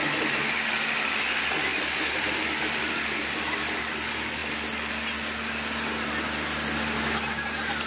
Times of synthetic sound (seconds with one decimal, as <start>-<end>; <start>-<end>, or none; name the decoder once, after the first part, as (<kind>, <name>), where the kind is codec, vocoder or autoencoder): 1.7-3.8 (vocoder, BigVGAN v2); 4.4-4.9